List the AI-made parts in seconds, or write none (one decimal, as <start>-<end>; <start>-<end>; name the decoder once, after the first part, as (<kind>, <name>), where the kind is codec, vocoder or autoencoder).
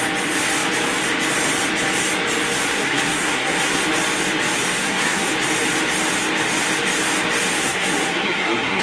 2.7-3.8 (codec, SNAC); 4.8-5.3; 7.6-8.8